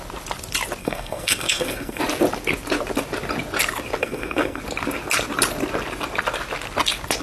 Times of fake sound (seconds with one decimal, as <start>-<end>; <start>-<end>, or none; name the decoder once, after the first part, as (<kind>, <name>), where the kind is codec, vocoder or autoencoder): 0.8-2.0 (codec, SNAC); 4.0-4.6